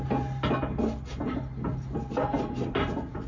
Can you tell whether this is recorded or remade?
recorded